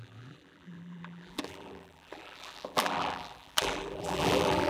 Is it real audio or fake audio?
fake